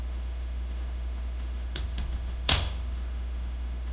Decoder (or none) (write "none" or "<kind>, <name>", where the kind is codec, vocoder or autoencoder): autoencoder, DAC-VAE